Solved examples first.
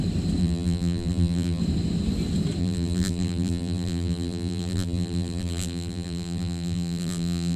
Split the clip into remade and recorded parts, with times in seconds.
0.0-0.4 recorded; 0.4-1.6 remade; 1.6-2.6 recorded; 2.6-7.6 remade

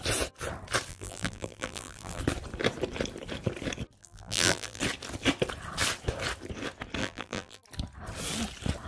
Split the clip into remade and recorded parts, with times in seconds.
0.0-0.9 recorded; 0.9-2.2 remade; 2.2-4.0 recorded; 4.0-4.8 remade; 4.8-7.0 recorded; 7.0-7.6 remade; 7.6-8.9 recorded